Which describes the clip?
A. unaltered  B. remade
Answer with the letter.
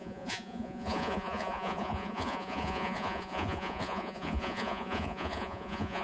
B